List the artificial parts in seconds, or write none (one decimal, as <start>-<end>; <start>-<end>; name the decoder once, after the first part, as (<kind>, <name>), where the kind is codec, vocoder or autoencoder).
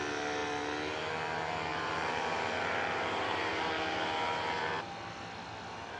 1.7-3.7 (vocoder, BigVGAN v2)